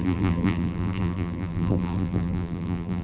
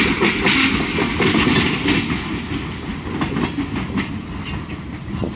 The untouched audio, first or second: second